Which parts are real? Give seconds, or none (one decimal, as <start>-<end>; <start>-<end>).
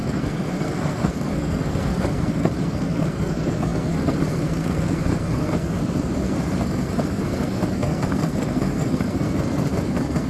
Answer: none